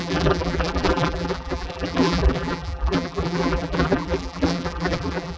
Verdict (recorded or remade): remade